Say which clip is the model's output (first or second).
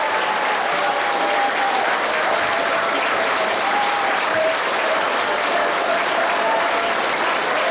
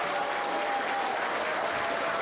first